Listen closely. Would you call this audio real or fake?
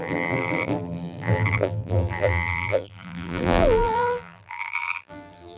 fake